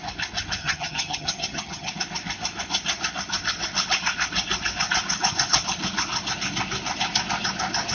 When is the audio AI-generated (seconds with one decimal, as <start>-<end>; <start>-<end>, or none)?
0.6-1.9